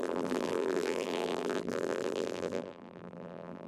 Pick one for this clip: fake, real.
fake